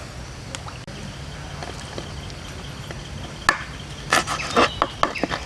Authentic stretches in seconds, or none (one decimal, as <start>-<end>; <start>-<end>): 0.0-5.5